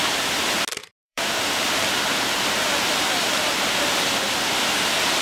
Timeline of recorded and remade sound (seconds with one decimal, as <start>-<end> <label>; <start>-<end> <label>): 0.0-0.9 recorded; 0.9-4.0 remade; 4.0-5.2 recorded

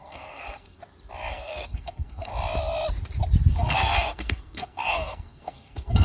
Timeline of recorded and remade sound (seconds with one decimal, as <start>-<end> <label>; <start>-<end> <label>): 0.0-0.8 remade; 0.8-1.3 recorded; 1.3-2.3 remade; 2.3-3.5 recorded; 3.5-6.0 remade

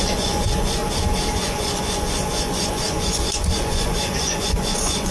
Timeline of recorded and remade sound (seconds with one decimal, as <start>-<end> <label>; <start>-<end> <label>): 0.0-0.8 remade; 0.8-1.3 recorded; 1.3-5.1 remade

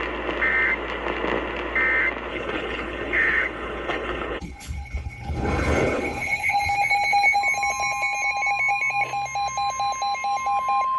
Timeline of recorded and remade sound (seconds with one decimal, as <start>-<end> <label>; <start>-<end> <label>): 0.0-2.3 recorded; 2.3-6.6 remade; 6.6-11.0 recorded